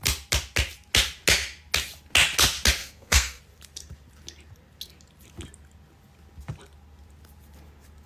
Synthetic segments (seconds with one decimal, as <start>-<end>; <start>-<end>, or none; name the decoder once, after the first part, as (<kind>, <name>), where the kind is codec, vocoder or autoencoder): 2.8-3.4 (codec, SNAC)